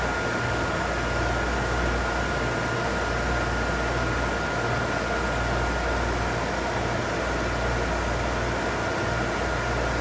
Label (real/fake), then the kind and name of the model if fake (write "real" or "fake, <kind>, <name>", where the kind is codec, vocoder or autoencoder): real